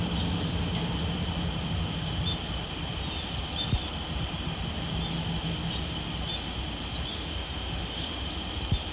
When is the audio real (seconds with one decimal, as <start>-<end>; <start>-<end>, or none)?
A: 0.0-7.1; 8.3-8.9